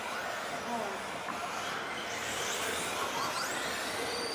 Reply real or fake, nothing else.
real